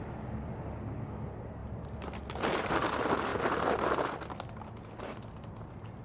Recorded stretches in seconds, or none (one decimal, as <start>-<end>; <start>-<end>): 0.0-6.0